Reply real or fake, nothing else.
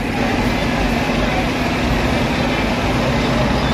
real